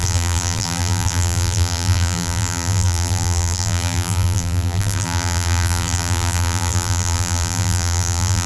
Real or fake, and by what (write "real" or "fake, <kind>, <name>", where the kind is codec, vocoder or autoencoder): fake, vocoder, BigVGAN v2